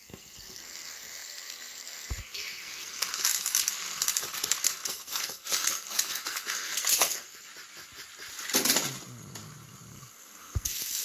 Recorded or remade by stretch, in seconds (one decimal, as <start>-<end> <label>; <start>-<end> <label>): 0.0-7.5 remade; 7.5-9.9 recorded; 9.9-11.0 remade